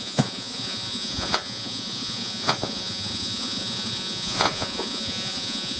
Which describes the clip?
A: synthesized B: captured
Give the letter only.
A